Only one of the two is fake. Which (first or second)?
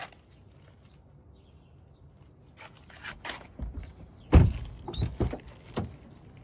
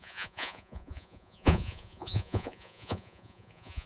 second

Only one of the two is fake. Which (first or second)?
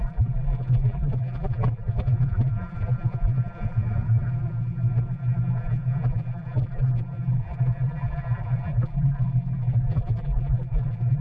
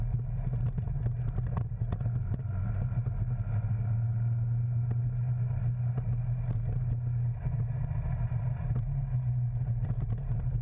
first